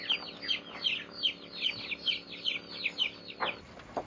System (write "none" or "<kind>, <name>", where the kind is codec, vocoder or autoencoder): none